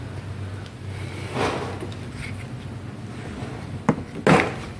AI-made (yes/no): no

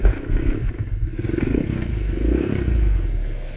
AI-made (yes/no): yes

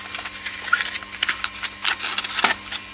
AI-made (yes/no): no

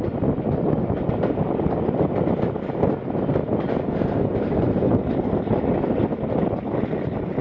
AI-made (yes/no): no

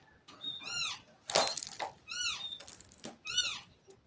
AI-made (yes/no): no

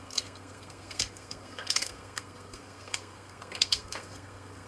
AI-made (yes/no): yes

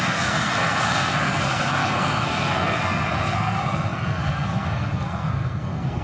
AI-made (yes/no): yes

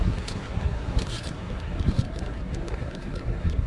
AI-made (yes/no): yes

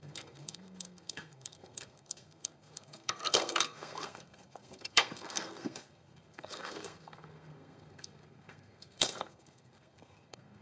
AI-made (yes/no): yes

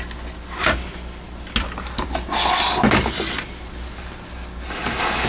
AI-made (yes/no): no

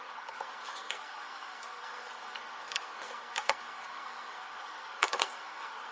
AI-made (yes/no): yes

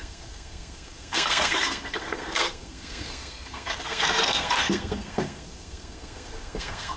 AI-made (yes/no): yes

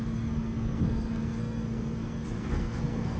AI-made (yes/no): yes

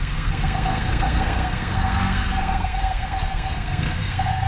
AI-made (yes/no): yes